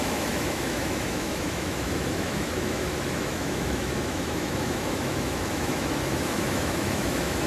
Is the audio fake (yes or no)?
yes